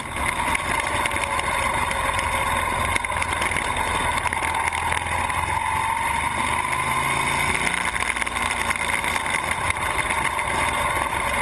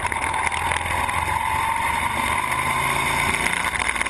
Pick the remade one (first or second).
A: second